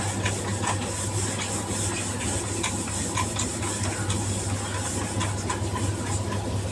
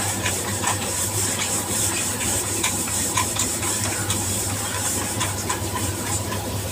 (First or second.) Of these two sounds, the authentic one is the first